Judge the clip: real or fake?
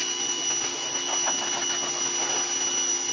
real